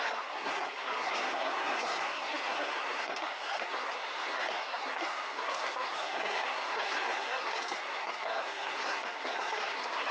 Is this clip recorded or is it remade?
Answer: remade